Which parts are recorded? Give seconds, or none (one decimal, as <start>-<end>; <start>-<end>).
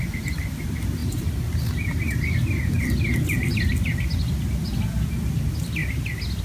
0.0-6.4